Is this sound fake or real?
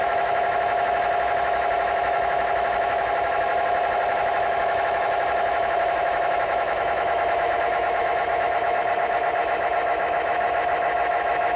fake